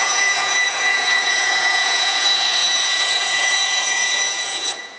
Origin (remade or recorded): remade